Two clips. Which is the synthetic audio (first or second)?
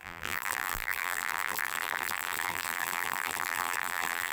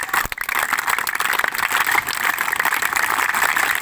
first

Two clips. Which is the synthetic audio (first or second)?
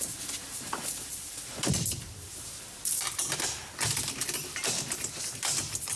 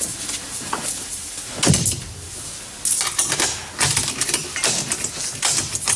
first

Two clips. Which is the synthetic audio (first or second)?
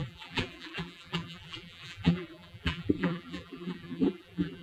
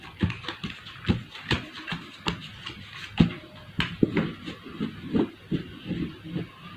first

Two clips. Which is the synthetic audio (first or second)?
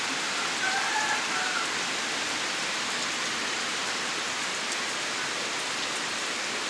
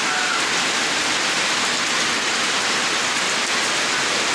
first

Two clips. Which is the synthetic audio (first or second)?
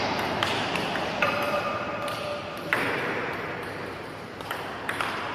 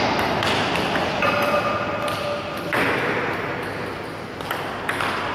first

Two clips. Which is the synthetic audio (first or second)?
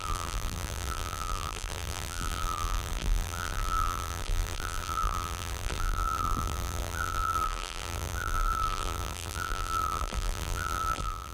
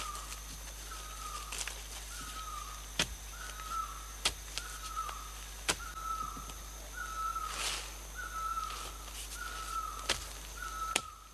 first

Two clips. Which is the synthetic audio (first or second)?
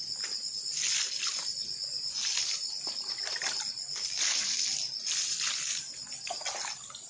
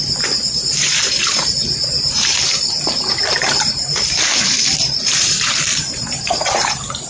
second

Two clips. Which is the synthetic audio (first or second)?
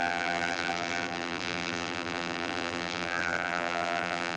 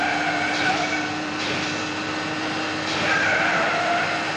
first